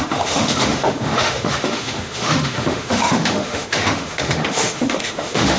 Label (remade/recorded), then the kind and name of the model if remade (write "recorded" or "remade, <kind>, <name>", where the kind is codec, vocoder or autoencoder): remade, autoencoder, DAC-VAE